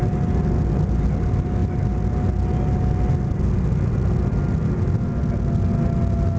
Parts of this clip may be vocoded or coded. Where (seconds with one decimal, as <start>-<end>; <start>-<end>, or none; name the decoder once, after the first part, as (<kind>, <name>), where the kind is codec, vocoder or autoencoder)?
none